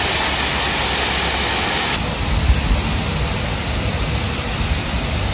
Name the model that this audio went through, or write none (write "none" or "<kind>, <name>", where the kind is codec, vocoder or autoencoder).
none